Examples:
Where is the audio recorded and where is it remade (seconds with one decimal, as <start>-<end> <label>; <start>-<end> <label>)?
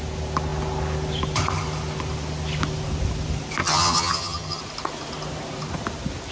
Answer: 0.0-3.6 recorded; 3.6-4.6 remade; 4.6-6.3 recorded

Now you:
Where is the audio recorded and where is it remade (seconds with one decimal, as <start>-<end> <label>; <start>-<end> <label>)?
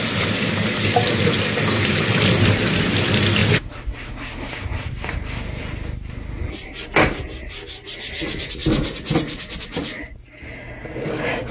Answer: 0.0-11.5 recorded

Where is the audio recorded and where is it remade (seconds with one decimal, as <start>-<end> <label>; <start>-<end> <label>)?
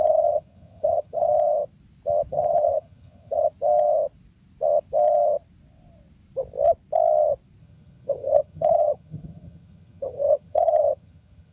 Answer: 0.0-1.3 remade; 1.3-2.3 recorded; 2.3-3.5 remade; 3.5-7.6 recorded; 7.6-11.5 remade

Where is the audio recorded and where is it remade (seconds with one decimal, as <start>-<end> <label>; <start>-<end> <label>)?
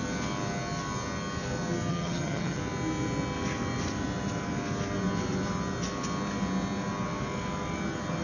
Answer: 0.0-1.9 recorded; 1.9-2.6 remade; 2.6-8.2 recorded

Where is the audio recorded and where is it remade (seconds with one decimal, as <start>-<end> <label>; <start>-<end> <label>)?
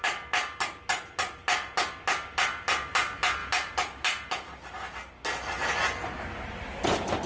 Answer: 0.0-7.3 recorded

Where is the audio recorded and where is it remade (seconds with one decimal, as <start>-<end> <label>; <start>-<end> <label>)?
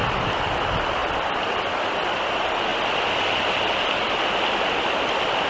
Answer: 0.0-5.5 recorded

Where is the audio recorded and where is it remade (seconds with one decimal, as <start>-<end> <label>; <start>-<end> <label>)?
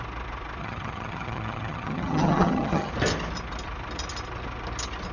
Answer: 0.0-0.6 recorded; 0.6-2.9 remade; 2.9-5.1 recorded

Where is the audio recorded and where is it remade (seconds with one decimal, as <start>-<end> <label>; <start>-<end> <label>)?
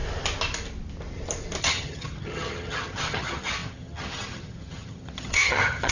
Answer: 0.0-1.6 recorded; 1.6-5.9 remade